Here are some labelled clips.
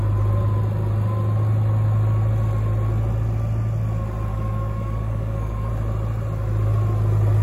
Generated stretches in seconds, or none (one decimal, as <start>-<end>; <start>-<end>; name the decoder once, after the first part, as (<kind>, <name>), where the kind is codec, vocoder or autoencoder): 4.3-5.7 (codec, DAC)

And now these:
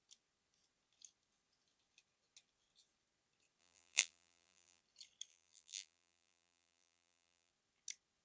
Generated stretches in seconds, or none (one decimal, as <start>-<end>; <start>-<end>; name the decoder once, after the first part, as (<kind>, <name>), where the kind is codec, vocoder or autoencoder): 3.6-4.8 (vocoder, BigVGAN v2); 5.3-7.5

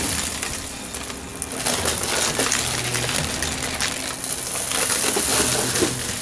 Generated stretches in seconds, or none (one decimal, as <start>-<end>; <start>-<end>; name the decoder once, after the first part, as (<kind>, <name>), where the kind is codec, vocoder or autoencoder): none